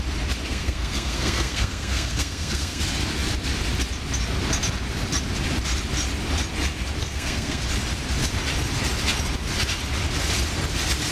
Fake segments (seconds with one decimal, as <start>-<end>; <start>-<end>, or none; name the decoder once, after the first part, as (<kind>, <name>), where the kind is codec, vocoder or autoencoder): 0.5-2.8 (codec, SNAC); 7.0-7.6

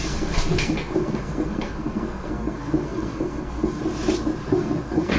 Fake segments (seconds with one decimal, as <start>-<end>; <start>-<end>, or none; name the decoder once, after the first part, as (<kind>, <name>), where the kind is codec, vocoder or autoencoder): 0.0-3.8 (codec, SNAC); 4.5-5.2